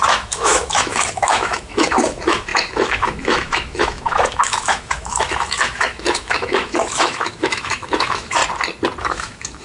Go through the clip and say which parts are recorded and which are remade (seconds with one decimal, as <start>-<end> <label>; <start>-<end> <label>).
0.0-8.4 remade; 8.4-9.0 recorded; 9.0-9.6 remade